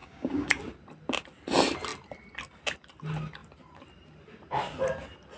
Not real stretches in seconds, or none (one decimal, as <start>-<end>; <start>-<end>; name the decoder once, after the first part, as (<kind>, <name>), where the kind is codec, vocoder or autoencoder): 0.0-0.6 (codec, DAC)